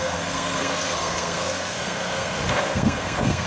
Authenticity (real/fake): fake